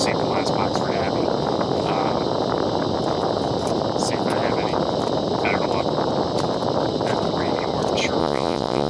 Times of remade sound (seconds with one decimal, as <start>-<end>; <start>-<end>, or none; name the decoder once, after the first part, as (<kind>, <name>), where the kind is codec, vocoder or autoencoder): 8.2-8.9 (vocoder, Vocos)